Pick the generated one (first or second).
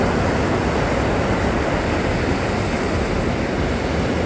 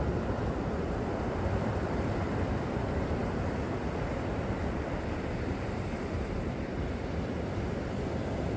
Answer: second